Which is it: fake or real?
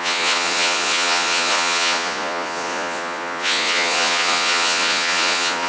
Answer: fake